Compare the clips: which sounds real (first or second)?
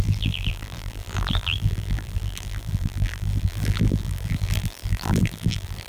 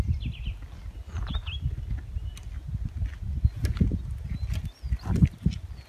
second